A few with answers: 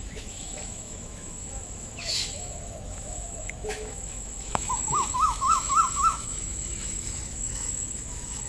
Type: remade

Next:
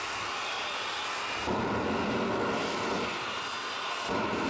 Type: recorded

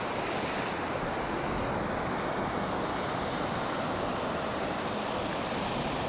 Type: recorded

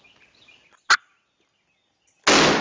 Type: recorded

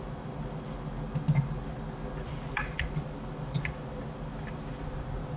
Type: recorded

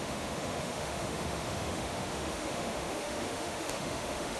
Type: remade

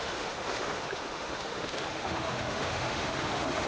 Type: remade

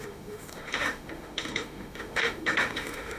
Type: remade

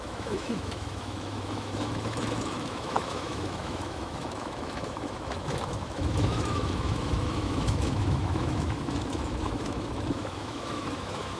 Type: remade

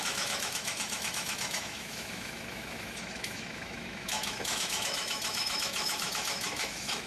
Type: remade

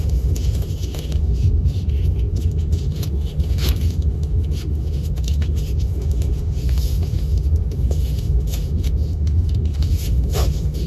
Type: remade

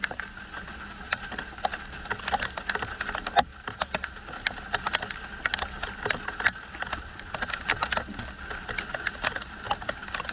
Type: recorded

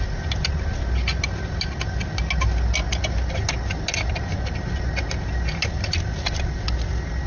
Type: recorded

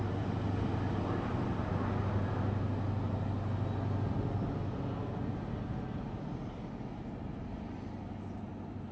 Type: recorded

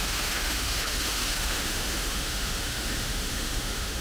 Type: remade